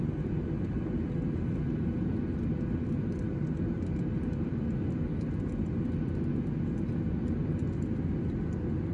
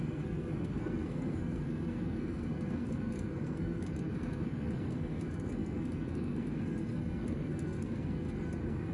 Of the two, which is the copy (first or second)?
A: second